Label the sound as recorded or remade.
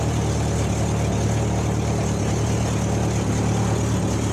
recorded